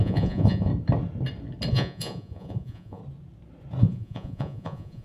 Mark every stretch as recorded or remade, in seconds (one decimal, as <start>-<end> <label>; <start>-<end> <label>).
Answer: 0.0-0.7 remade; 0.7-1.7 recorded; 1.7-3.0 remade; 3.0-3.8 recorded; 3.8-5.0 remade